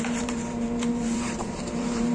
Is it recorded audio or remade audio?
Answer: remade